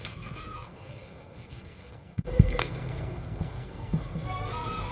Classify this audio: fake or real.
fake